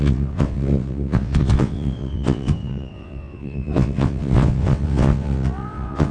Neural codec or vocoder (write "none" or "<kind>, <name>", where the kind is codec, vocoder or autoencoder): vocoder, WaveNeXt